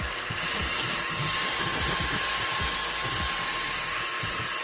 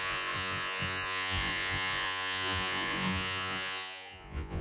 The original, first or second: first